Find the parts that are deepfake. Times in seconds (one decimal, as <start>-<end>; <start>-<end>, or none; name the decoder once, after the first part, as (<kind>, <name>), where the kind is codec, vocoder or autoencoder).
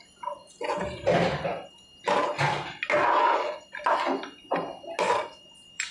0.0-1.5 (vocoder, BigVGAN v2); 5.0-5.9